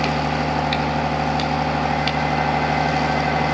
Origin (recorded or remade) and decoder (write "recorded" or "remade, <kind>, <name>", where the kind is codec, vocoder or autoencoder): recorded